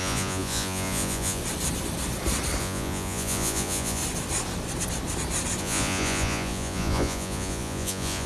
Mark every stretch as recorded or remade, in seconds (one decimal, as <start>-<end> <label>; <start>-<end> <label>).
0.0-1.4 remade; 1.4-2.6 recorded; 2.6-4.0 remade; 4.0-5.6 recorded; 5.6-8.3 remade